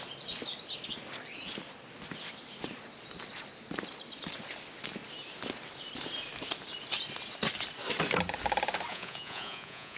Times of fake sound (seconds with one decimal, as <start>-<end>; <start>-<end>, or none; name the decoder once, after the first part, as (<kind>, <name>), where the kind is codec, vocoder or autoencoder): 8.9-10.0 (vocoder, Vocos)